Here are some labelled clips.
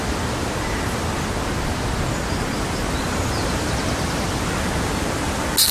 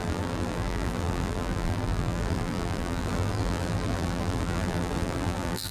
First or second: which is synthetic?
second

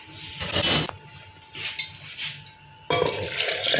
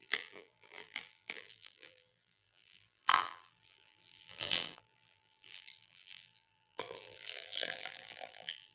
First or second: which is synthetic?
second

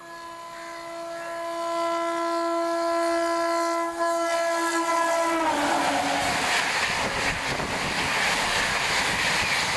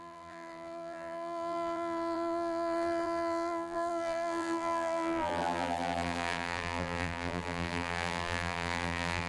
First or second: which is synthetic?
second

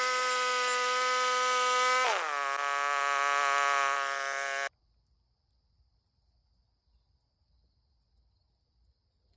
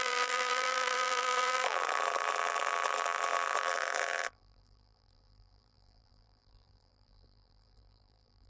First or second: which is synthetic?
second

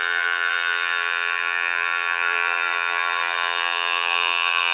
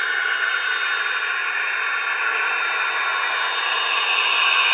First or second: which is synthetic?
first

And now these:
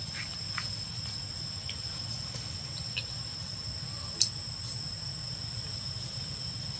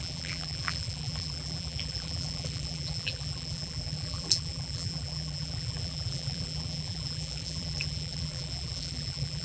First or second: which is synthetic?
second